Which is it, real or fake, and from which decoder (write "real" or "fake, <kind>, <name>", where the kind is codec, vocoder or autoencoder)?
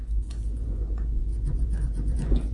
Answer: fake, vocoder, Vocos